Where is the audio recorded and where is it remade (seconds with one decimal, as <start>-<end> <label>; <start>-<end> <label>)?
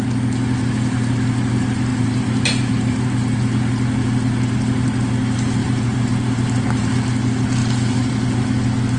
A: 0.0-1.9 recorded; 1.9-3.4 remade; 3.4-5.6 recorded; 5.6-6.9 remade; 6.9-7.6 recorded; 7.6-8.1 remade; 8.1-9.0 recorded